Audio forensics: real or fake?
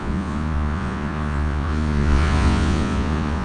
fake